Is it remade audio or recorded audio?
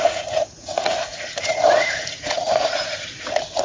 remade